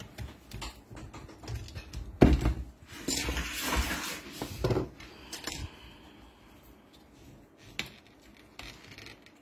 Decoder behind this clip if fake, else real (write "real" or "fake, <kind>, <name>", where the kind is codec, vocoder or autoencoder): real